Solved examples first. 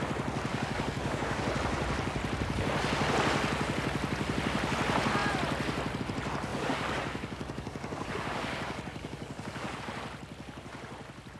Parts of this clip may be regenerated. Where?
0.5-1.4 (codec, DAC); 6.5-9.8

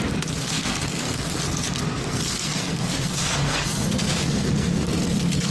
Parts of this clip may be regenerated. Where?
0.4-1.4 (codec, SNAC); 1.9-5.5

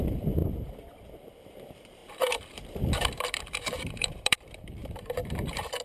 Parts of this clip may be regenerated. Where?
0.0-0.4 (vocoder, BigVGAN v2); 1.2-5.8

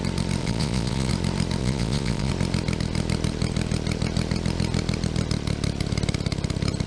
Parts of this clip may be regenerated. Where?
0.4-1.1 (vocoder, Vocos); 1.6-2.3

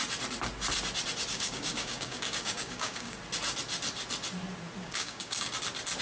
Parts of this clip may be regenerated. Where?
1.3-3.2 (codec, DAC); 4.8-5.5

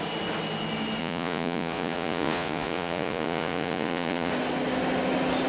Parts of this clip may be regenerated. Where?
1.0-4.3 (vocoder, Vocos)